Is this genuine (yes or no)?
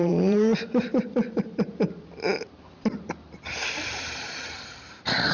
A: no